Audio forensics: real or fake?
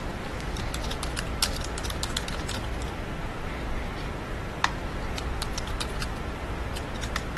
real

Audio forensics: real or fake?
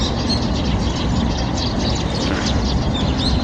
real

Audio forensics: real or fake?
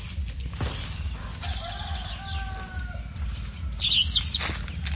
real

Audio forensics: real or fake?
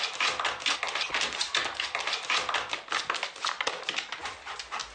real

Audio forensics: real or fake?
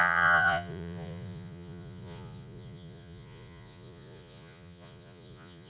fake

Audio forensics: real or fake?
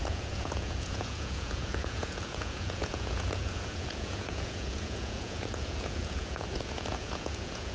fake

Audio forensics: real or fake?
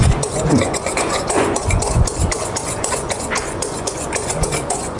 fake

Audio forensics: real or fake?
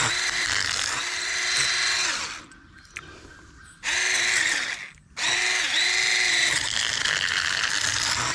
real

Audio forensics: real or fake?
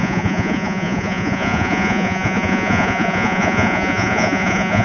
fake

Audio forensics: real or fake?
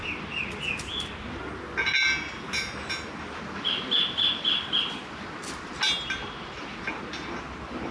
real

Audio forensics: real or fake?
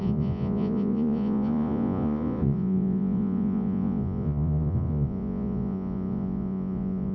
fake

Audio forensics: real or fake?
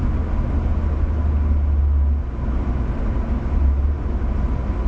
real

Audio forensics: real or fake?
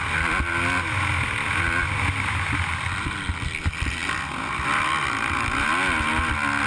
real